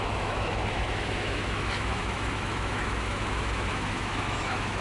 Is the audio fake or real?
fake